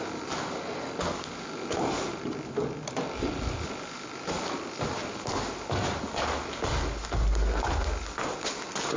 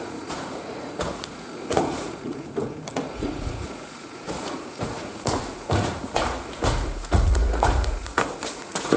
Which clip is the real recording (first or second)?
first